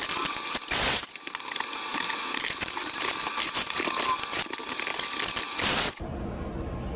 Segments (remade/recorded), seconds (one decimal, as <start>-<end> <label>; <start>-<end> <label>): 0.0-7.0 recorded